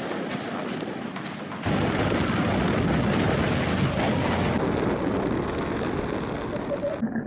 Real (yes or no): yes